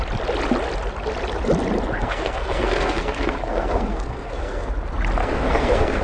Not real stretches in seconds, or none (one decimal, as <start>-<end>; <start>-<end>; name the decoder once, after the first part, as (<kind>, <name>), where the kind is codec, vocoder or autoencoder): 2.0-4.7 (codec, SNAC); 5.2-6.0

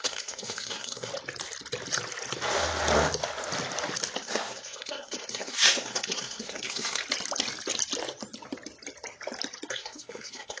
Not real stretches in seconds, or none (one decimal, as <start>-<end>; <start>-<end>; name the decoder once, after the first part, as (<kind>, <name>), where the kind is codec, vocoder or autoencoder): 0.0-1.1 (codec, SNAC); 4.2-7.0; 9.7-10.6

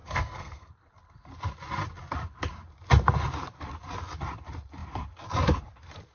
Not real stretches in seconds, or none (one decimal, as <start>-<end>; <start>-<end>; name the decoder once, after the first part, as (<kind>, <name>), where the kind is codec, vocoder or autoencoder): 0.0-0.7 (codec, SNAC)

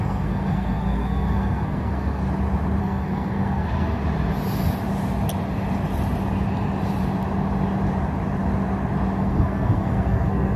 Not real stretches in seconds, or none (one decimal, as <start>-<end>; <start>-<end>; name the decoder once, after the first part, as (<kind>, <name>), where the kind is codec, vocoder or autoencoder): 0.0-2.2 (codec, SNAC); 2.8-4.0; 9.2-10.6

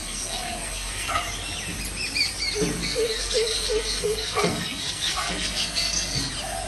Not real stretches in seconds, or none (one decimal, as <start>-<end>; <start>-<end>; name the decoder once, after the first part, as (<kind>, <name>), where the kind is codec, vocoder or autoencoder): 0.0-1.2 (codec, SNAC); 2.8-6.3

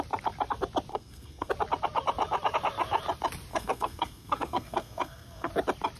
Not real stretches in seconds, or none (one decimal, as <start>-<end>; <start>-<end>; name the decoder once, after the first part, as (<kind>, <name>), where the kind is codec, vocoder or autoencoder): 0.9-1.5 (codec, SNAC); 3.5-5.5